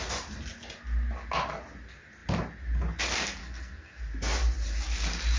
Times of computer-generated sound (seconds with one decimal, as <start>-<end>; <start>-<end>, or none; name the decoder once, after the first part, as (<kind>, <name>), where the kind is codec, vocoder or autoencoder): 3.4-4.0 (codec, SNAC)